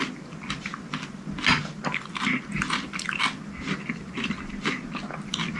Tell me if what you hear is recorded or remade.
recorded